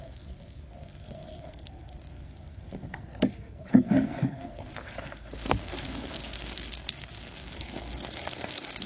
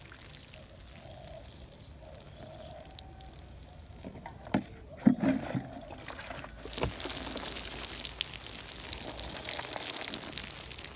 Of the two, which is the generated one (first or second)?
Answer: first